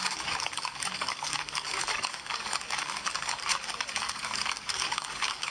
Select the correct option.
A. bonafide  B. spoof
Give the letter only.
B